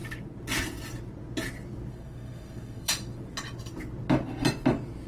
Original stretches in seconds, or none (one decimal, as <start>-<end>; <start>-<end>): 0.0-1.9; 2.9-5.1